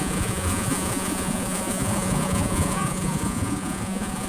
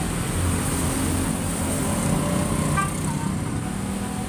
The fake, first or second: first